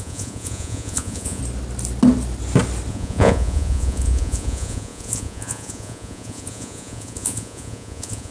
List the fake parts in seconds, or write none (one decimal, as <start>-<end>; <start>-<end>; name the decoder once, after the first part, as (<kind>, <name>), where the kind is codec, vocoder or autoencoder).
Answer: 0.0-1.4 (vocoder, Vocos); 2.9-8.3